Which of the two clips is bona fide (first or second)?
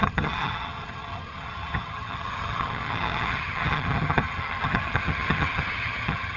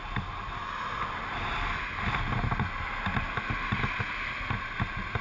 second